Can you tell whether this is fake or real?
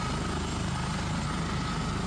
real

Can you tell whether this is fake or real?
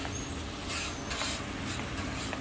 real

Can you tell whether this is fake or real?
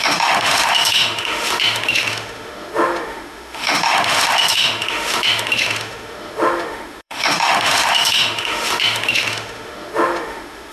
fake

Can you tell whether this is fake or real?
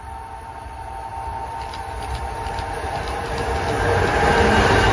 real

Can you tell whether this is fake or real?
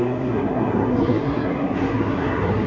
fake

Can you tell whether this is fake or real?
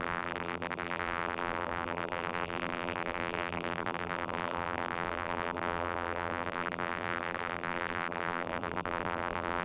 fake